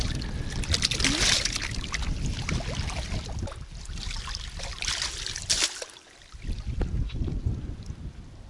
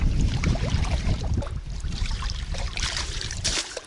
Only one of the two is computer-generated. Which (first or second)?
second